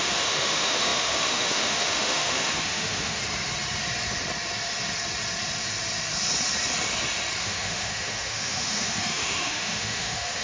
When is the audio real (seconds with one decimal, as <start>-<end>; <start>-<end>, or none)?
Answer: 3.2-7.4